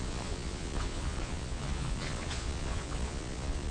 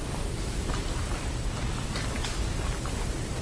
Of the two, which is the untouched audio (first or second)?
second